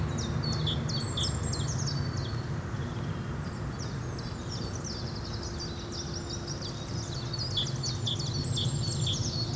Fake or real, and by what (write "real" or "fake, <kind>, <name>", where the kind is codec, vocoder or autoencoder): real